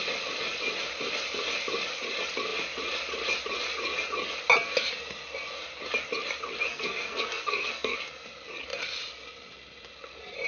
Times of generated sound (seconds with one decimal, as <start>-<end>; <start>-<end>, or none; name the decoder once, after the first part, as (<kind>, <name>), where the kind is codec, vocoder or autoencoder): 6.7-8.0 (codec, SNAC)